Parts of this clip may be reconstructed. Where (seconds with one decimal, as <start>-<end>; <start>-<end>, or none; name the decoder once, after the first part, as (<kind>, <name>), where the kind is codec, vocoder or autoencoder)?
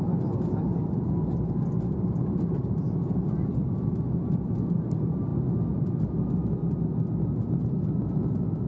0.7-4.2 (vocoder, BigVGAN v2)